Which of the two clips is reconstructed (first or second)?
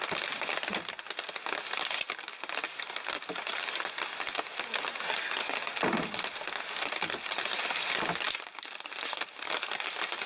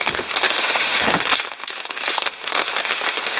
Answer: second